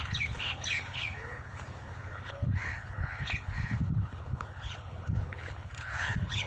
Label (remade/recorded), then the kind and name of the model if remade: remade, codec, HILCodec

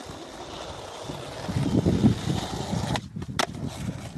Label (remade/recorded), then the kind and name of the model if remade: recorded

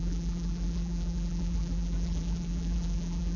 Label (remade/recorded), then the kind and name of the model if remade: remade, vocoder, BigVGAN v2